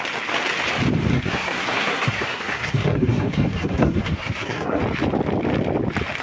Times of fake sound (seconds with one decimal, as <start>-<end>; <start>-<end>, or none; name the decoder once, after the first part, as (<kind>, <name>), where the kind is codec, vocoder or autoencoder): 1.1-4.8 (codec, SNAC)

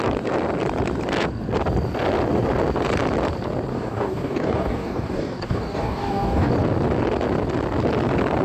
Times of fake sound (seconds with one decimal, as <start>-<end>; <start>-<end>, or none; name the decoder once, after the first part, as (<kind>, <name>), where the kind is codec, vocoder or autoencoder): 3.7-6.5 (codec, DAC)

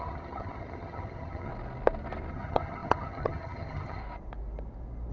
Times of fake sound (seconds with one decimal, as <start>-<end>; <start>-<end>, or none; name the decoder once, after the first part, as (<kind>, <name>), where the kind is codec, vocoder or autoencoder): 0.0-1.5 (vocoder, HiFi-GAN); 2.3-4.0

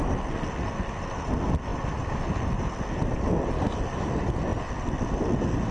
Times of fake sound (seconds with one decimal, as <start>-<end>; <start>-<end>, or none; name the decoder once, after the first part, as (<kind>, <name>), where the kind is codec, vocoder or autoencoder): none